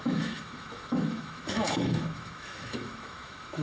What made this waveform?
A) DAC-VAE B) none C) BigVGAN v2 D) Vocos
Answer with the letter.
A